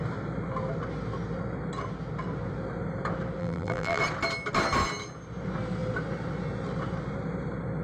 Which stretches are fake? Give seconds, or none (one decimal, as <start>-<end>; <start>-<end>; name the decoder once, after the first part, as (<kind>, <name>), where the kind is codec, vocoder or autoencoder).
3.4-4.0 (vocoder, BigVGAN v2)

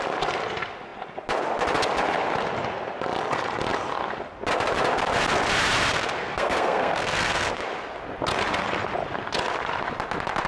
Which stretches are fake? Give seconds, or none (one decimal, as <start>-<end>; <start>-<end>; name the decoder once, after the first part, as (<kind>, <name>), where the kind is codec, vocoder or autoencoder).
6.2-7.6 (codec, SNAC)

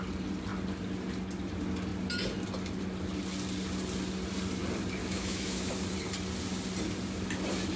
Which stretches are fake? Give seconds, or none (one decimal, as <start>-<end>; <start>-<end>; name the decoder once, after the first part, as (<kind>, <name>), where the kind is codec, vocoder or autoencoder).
5.0-5.7 (autoencoder, DAC-VAE)